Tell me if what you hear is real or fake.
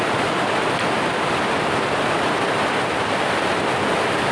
real